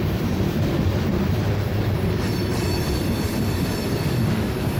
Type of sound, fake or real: fake